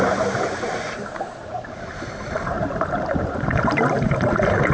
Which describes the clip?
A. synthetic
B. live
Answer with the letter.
A